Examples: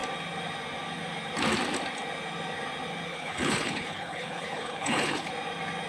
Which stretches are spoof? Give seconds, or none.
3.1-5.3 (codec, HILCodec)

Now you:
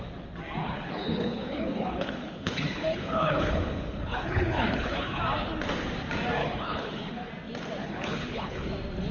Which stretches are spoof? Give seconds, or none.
0.6-5.2 (codec, HILCodec); 6.4-7.3; 7.8-8.7

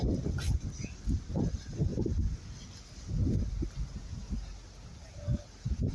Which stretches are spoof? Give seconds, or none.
none